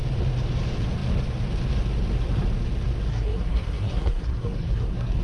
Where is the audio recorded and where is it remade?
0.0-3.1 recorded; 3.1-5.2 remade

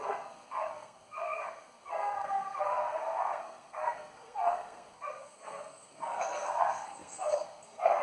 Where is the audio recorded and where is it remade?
0.0-8.0 remade